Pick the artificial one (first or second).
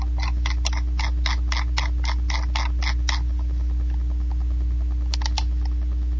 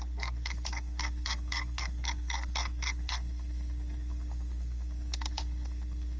second